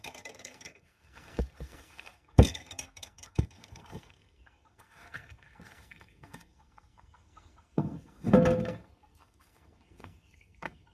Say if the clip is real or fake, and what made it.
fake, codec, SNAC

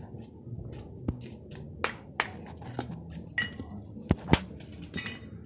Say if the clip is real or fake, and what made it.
real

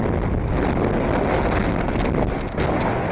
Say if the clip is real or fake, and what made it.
real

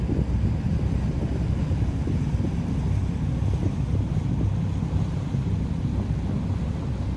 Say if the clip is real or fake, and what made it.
real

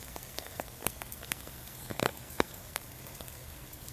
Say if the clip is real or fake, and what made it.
fake, codec, SNAC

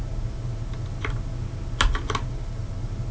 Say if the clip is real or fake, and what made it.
real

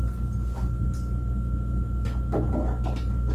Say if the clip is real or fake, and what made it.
real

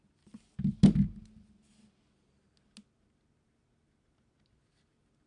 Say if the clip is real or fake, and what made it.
real